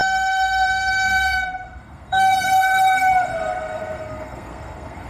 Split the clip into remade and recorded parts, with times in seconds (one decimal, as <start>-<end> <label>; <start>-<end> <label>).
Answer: 0.0-5.1 remade